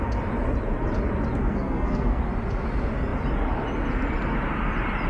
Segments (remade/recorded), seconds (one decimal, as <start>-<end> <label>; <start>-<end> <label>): 0.0-1.4 recorded; 1.4-2.2 remade; 2.2-5.1 recorded